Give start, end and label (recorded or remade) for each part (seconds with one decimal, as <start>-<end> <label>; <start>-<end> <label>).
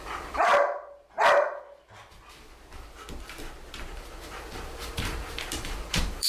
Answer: 0.0-0.5 remade; 0.5-3.8 recorded; 3.8-6.3 remade